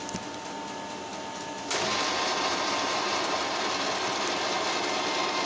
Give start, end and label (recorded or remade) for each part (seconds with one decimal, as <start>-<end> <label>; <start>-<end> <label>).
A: 0.0-1.1 recorded; 1.1-3.5 remade; 3.5-5.5 recorded